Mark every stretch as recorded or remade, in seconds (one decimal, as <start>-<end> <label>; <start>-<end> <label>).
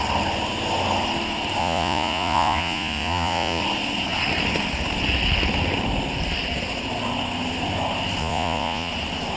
0.0-1.6 recorded; 1.6-3.6 remade; 3.6-8.2 recorded; 8.2-8.9 remade; 8.9-9.4 recorded